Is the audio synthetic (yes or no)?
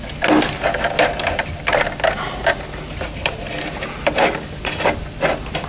no